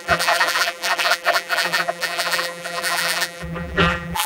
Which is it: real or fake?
fake